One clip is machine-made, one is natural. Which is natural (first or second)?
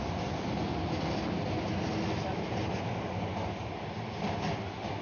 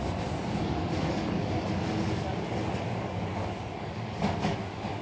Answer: first